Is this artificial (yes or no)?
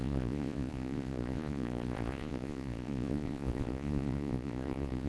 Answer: yes